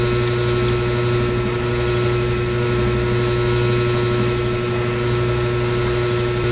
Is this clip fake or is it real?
real